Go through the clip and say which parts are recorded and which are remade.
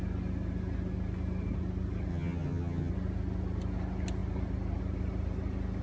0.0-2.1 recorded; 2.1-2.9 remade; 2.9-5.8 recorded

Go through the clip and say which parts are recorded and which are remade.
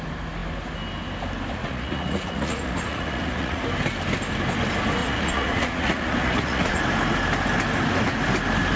0.0-1.6 recorded; 1.6-3.6 remade; 3.6-5.0 recorded; 5.0-6.8 remade; 6.8-8.8 recorded